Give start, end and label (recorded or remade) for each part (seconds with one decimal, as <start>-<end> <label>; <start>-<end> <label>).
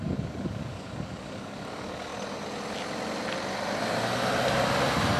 0.0-2.1 remade; 2.1-5.2 recorded